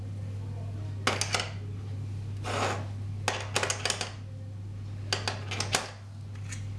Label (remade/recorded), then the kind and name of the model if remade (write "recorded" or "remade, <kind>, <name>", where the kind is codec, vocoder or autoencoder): recorded